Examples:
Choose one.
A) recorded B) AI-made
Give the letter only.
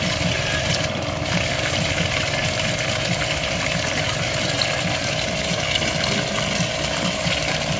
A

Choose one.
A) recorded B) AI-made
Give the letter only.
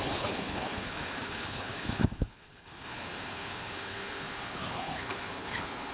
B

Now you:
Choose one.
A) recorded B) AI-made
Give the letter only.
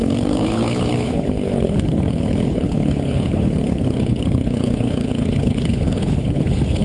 B